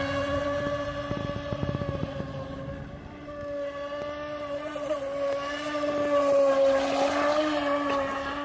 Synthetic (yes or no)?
no